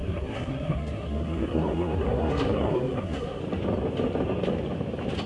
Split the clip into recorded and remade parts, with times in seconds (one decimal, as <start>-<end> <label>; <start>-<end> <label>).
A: 0.0-3.4 remade; 3.4-5.3 recorded